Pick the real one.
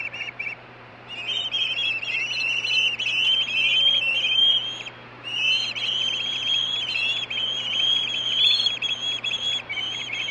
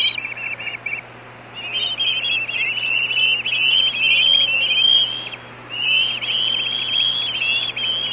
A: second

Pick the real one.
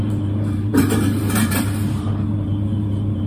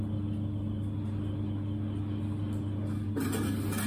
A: second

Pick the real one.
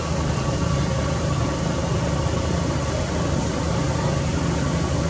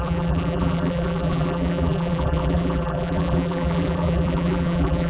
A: first